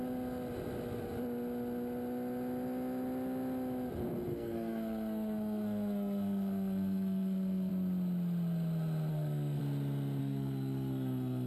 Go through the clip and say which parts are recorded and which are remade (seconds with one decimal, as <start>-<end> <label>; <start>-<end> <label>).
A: 0.0-4.3 recorded; 4.3-7.7 remade; 7.7-9.1 recorded; 9.1-9.6 remade; 9.6-10.2 recorded; 10.2-11.5 remade